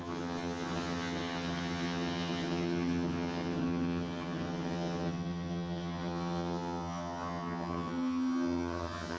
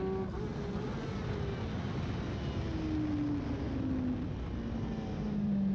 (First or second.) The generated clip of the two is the first